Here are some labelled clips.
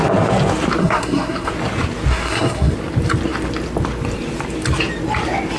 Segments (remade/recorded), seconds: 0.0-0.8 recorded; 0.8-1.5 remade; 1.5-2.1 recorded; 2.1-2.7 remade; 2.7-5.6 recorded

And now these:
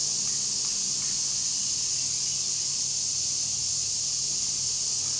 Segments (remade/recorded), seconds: 0.0-3.1 recorded; 3.1-5.2 remade

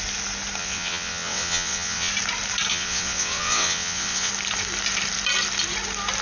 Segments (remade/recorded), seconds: 0.0-0.6 recorded; 0.6-2.1 remade; 2.1-2.7 recorded; 2.7-4.3 remade; 4.3-6.2 recorded

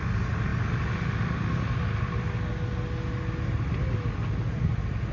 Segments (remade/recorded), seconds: 0.0-5.1 recorded

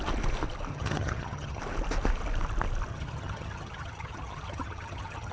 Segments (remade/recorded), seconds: 0.0-0.7 recorded; 0.7-1.6 remade; 1.6-2.9 recorded; 2.9-5.3 remade

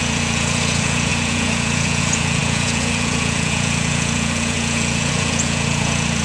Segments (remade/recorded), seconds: 0.0-6.2 remade

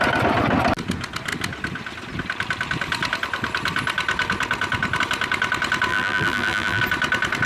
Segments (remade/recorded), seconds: 0.0-5.9 recorded; 5.9-6.8 remade; 6.8-7.5 recorded